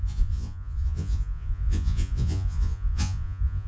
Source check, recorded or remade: remade